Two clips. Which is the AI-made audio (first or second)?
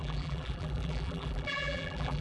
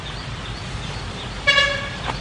first